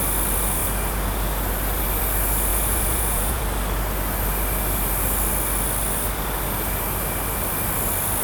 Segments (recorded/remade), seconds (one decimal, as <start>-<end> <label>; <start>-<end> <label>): 0.0-2.5 recorded; 2.5-3.4 remade; 3.4-8.2 recorded